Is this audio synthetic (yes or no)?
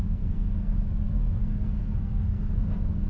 yes